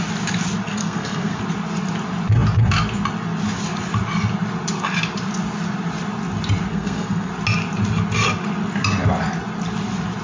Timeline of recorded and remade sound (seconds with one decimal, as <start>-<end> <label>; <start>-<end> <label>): 0.0-0.7 recorded; 0.7-1.4 remade; 1.4-6.7 recorded; 6.7-7.3 remade; 7.3-10.2 recorded